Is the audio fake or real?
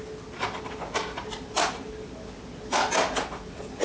real